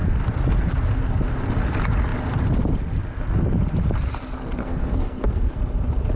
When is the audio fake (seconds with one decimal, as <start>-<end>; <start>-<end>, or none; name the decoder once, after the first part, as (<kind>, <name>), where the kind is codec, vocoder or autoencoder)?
4.6-5.6 (codec, SNAC)